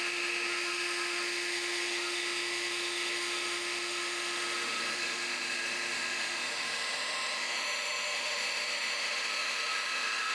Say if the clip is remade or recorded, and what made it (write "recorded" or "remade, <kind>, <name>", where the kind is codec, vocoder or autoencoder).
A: remade, autoencoder, DAC-VAE